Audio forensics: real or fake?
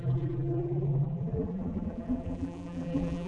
fake